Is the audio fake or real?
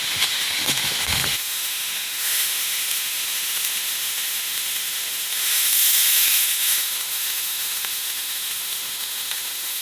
fake